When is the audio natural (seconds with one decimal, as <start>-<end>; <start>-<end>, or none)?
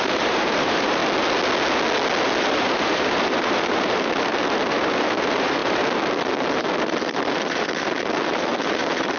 1.0-2.4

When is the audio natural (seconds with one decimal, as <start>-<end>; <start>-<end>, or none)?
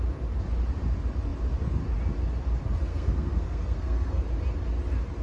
0.0-2.9; 4.2-5.2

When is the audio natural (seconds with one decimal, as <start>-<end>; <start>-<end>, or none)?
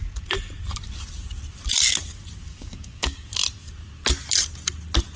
0.0-2.5; 3.3-5.2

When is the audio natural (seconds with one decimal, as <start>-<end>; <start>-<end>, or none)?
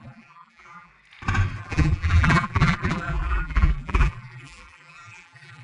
0.9-1.6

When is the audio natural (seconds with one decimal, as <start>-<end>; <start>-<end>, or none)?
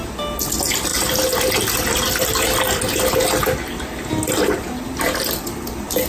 0.0-6.1